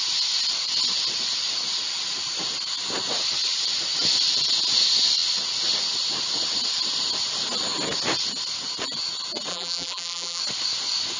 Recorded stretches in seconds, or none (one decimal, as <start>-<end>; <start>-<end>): 0.0-9.5; 10.4-11.2